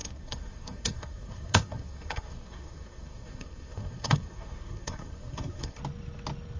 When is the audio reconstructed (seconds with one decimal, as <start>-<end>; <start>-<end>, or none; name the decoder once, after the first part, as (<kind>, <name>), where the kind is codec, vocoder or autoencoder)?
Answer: 0.0-5.8 (codec, SNAC)